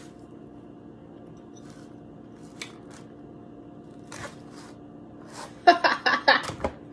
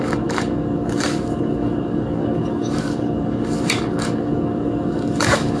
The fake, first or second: second